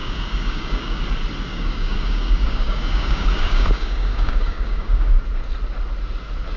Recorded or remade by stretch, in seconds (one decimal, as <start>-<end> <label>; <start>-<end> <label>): 0.0-1.0 remade; 1.0-1.5 recorded; 1.5-5.2 remade; 5.2-6.6 recorded

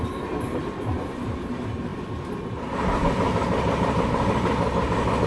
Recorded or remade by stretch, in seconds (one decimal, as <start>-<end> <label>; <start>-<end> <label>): 0.0-5.3 recorded

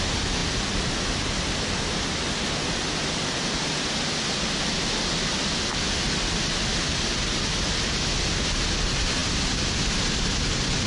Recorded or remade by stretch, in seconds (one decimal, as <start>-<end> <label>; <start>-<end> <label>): 0.0-10.9 recorded

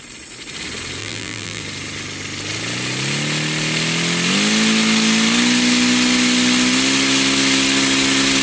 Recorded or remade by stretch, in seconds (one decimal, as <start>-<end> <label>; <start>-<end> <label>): 0.0-1.0 recorded; 1.0-1.6 remade; 1.6-8.4 recorded

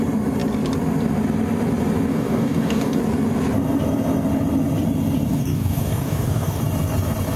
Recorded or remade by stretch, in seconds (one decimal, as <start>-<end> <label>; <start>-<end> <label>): 0.0-2.1 recorded; 2.1-3.0 remade; 3.0-5.3 recorded; 5.3-6.6 remade; 6.6-7.4 recorded

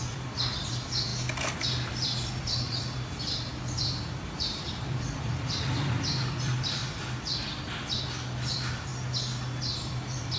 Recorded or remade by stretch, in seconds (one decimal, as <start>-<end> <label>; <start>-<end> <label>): 0.0-1.1 remade; 1.1-1.9 recorded; 1.9-6.8 remade; 6.8-8.5 recorded; 8.5-8.9 remade; 8.9-9.7 recorded; 9.7-10.4 remade

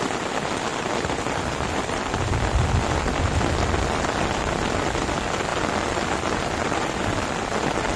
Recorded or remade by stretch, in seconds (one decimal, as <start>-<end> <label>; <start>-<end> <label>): 0.0-0.7 recorded; 0.7-2.2 remade; 2.2-5.5 recorded; 5.5-7.3 remade; 7.3-8.0 recorded

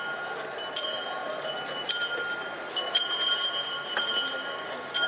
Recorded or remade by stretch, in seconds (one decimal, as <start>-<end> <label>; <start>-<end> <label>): 0.0-5.1 recorded